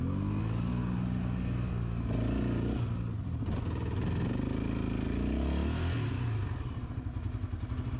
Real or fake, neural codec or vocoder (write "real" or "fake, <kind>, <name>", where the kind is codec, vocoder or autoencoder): real